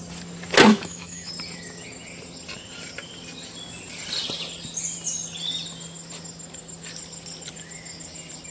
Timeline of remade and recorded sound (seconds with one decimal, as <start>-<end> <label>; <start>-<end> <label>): 0.0-0.7 recorded; 0.7-1.3 remade; 1.3-8.5 recorded